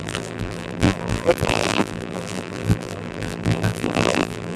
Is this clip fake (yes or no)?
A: yes